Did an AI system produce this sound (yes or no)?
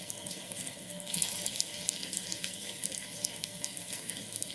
yes